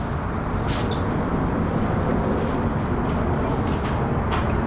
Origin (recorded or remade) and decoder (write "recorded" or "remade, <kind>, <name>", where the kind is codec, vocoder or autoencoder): recorded